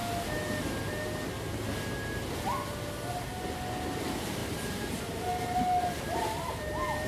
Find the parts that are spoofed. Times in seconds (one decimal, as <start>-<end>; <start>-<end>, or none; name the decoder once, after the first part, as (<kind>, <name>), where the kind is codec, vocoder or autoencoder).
4.0-7.1 (vocoder, BigVGAN v2)

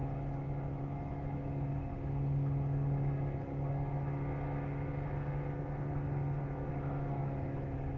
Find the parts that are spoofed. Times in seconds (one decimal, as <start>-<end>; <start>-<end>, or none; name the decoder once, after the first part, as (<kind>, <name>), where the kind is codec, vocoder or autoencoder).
0.6-1.9 (autoencoder, DAC-VAE); 6.7-8.0

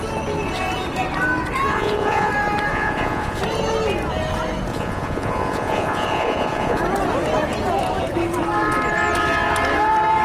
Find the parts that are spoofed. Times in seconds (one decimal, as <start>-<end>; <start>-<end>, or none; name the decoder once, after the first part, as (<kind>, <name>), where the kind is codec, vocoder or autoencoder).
1.7-2.3 (vocoder, Vocos); 2.7-3.4; 4.7-6.8

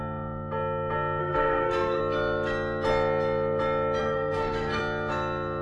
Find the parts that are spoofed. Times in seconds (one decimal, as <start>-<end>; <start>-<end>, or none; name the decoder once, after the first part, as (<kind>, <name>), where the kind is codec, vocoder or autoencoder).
1.2-2.0 (codec, SNAC); 4.0-4.8

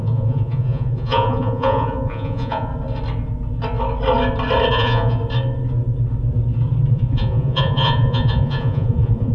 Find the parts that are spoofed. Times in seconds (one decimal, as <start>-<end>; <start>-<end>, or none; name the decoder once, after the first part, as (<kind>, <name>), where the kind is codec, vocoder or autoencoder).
0.0-2.7 (vocoder, Vocos); 4.7-5.2; 6.9-9.3

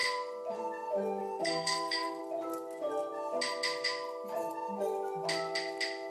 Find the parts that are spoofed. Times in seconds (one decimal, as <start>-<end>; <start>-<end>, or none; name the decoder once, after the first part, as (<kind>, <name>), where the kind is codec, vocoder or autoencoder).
1.2-2.2 (codec, SNAC)

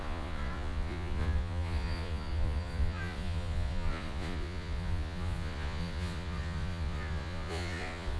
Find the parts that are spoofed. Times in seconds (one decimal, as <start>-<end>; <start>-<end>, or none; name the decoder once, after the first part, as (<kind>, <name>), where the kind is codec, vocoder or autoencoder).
0.0-8.2 (vocoder, Vocos)

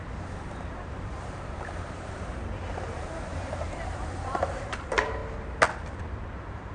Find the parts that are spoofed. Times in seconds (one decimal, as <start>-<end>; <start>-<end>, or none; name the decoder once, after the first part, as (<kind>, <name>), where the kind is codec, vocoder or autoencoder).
0.0-5.2 (vocoder, BigVGAN v2); 6.0-6.7